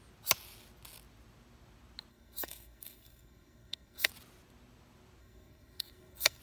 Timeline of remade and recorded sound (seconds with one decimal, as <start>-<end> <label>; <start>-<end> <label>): 0.0-2.1 recorded; 2.1-4.1 remade; 4.1-5.2 recorded; 5.2-6.4 remade